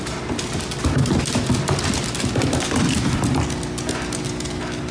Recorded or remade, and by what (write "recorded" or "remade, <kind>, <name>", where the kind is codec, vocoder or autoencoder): recorded